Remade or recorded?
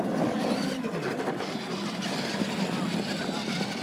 recorded